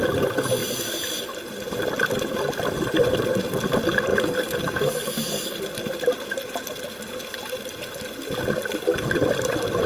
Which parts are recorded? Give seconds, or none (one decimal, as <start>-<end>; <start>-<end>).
0.0-4.1; 5.6-9.9